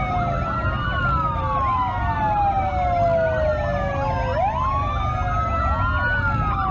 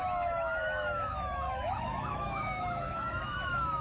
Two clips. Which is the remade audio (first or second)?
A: second